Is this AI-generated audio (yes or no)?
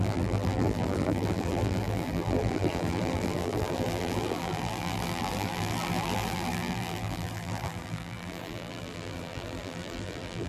yes